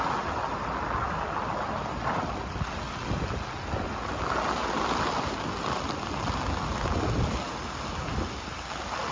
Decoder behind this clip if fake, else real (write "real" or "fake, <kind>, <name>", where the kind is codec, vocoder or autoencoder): real